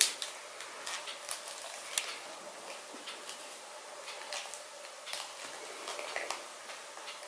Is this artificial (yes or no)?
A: no